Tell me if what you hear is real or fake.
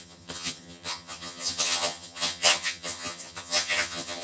fake